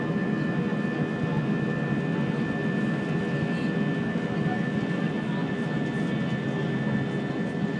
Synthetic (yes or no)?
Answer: no